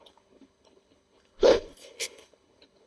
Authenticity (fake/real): fake